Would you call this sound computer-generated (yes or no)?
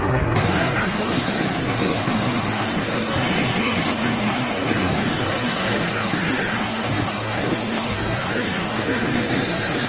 yes